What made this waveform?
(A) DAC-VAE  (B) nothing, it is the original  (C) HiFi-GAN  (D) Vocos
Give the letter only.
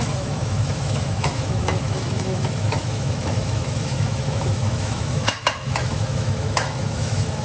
A